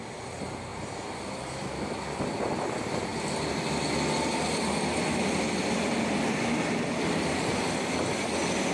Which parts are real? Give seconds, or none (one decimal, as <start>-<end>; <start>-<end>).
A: 0.0-8.7

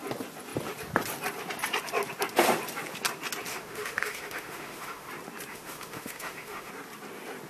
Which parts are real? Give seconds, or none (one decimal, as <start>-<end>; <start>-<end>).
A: 0.0-3.5; 5.1-5.5; 6.7-7.5

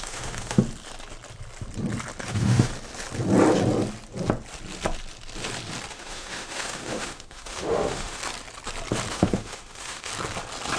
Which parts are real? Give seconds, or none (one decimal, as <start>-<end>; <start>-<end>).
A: 0.6-2.3; 2.7-5.9; 8.2-9.1; 10.1-10.8

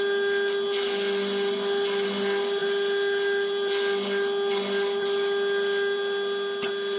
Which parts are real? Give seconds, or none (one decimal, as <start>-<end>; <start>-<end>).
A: 0.0-7.0

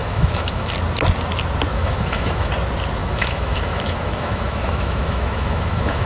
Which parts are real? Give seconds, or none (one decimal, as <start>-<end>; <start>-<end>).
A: 0.7-1.7; 2.5-3.0

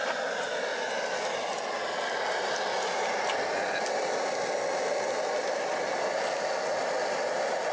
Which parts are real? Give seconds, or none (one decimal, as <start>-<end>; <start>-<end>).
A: 0.0-7.7

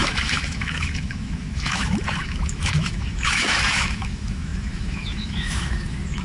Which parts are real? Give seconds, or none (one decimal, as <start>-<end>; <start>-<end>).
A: none